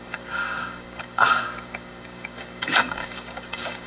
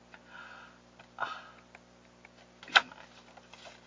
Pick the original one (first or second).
second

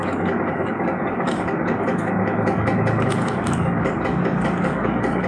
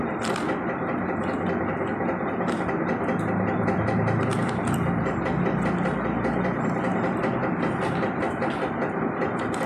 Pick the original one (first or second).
second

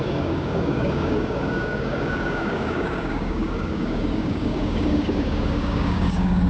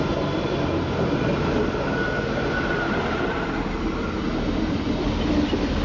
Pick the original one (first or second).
second